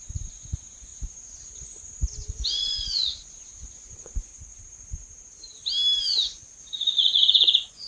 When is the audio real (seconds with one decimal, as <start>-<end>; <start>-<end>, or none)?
4.3-6.0